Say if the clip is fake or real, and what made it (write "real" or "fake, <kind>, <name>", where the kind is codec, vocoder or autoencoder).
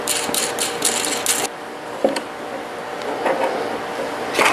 real